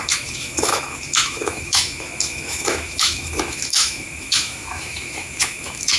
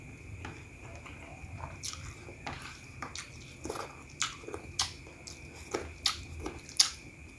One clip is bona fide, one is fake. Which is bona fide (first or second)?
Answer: second